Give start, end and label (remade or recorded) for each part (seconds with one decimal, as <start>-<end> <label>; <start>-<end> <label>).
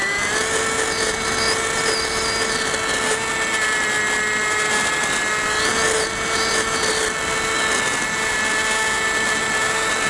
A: 0.0-10.1 recorded